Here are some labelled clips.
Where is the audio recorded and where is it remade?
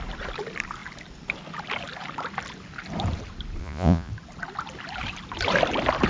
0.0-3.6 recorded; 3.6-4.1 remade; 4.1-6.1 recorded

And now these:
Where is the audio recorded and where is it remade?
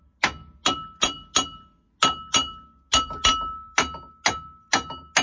0.0-5.2 recorded